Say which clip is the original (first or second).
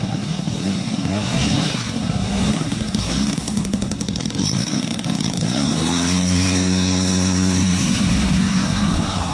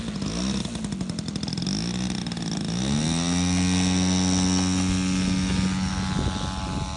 second